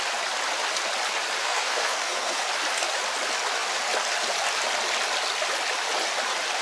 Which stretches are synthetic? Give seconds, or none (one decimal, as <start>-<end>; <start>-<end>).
1.4-2.4

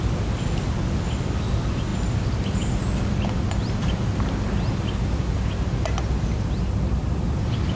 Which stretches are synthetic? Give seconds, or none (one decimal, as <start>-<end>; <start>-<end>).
none

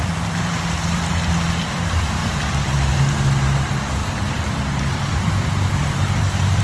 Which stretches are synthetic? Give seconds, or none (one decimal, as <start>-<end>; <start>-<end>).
0.0-6.6

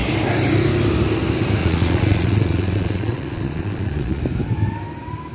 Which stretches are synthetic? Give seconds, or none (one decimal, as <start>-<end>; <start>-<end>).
1.6-4.2

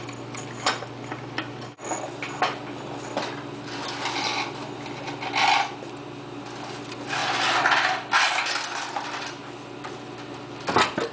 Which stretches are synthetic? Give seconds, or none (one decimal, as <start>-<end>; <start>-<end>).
none

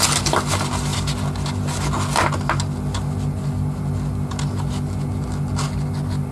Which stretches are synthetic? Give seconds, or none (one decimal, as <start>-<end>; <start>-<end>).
none

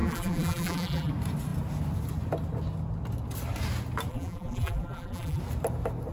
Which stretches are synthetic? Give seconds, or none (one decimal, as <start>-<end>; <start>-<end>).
0.0-1.1; 4.1-5.4